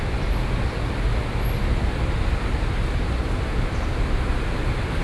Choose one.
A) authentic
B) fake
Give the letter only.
A